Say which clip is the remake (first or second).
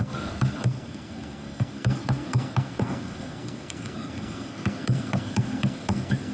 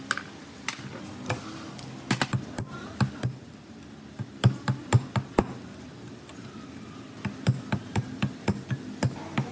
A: first